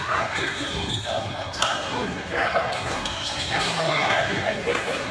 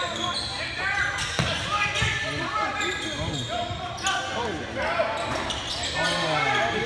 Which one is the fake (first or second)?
first